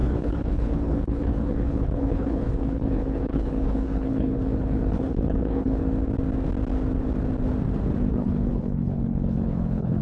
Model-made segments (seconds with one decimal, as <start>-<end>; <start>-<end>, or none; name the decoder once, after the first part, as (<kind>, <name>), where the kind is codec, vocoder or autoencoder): 0.0-5.8 (codec, HILCodec); 8.1-10.0